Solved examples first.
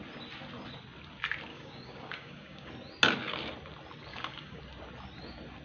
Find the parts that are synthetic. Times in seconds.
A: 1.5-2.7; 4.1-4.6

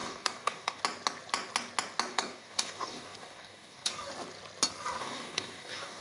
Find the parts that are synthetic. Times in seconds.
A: 0.0-0.8; 2.1-3.9; 5.0-6.0

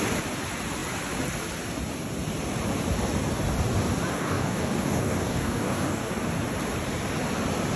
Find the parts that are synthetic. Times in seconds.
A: 4.1-6.1

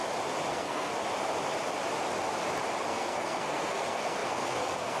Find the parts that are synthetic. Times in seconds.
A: 0.5-0.9; 2.8-5.0

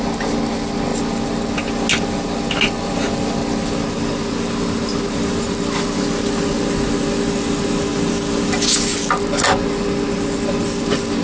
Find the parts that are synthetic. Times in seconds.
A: none

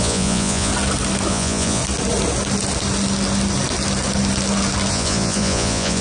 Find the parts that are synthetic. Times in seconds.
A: 0.0-0.7; 1.3-1.8; 4.9-6.0

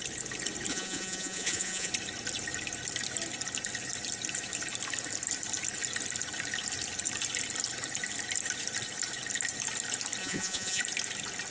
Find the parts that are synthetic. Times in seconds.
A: 0.7-1.9; 10.2-10.8